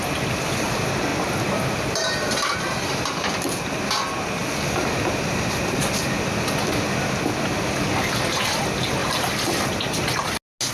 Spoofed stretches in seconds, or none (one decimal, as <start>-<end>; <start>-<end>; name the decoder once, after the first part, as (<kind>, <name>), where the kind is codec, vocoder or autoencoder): 9.0-9.7 (vocoder, BigVGAN v2)